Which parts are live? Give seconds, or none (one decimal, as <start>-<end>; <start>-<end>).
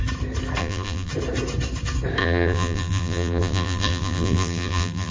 0.0-0.6; 1.1-2.2